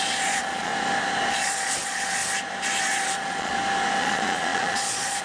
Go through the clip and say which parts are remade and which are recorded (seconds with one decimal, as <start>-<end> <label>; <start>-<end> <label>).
0.0-0.7 remade; 0.7-1.3 recorded; 1.3-2.2 remade; 2.2-2.8 recorded; 2.8-3.5 remade; 3.5-4.0 recorded; 4.0-5.2 remade